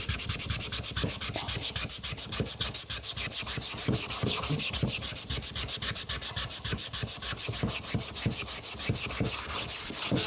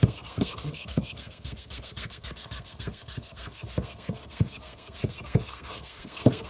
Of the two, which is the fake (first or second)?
second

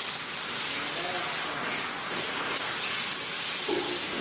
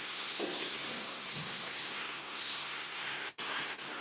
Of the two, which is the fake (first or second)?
second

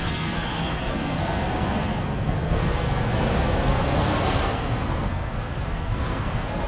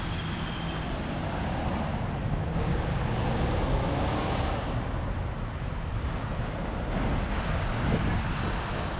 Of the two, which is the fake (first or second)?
first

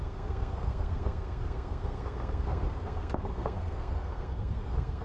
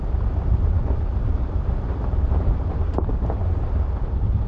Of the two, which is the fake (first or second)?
first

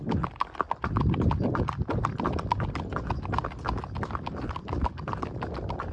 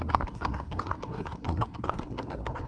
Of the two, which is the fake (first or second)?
second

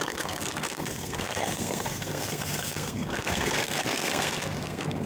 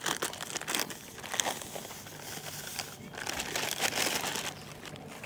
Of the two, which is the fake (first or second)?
first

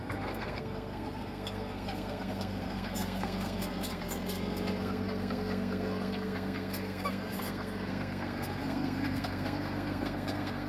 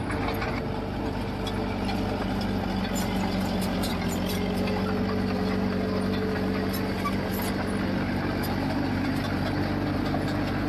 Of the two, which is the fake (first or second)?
first